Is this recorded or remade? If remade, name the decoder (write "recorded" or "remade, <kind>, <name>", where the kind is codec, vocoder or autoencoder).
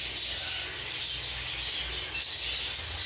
recorded